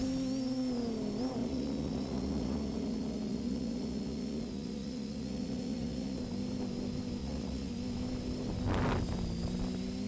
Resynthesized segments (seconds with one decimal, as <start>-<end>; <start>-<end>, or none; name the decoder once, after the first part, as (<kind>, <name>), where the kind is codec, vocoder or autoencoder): 1.4-6.2 (vocoder, Vocos); 7.2-7.7